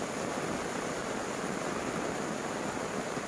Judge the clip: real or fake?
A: real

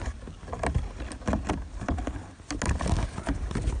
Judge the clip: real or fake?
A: real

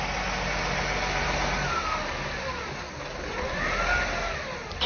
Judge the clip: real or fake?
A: real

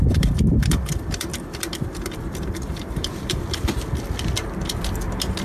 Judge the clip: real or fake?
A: fake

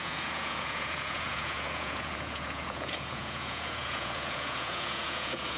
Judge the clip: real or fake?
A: fake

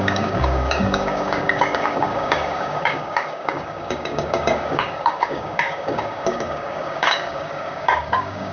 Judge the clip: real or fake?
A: fake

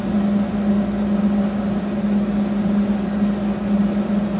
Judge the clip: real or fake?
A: real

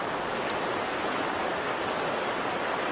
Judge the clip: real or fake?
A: real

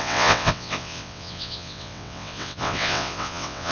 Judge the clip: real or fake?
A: fake